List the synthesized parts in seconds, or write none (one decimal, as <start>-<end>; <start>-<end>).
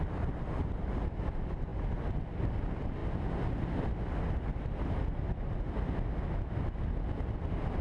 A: 0.0-3.0; 7.3-7.8